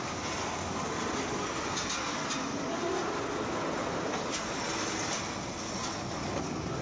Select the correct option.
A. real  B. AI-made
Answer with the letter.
A